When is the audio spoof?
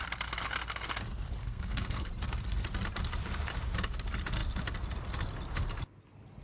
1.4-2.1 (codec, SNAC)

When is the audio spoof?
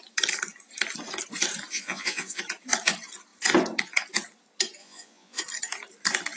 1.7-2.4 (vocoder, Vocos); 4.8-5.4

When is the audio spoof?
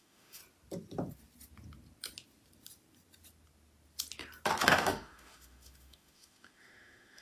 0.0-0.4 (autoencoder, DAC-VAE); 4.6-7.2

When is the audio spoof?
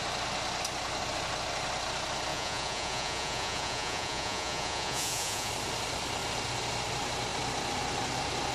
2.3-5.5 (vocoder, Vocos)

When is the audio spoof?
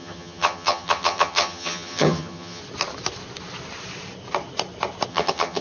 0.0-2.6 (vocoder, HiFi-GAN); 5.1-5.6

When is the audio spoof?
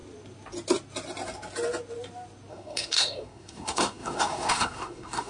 2.5-5.3 (codec, SNAC)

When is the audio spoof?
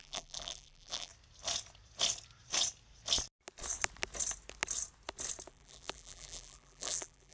0.0-1.1 (vocoder, BigVGAN v2); 5.5-7.3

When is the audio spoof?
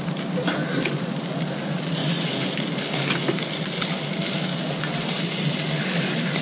none